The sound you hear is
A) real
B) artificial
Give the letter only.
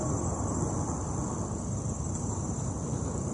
A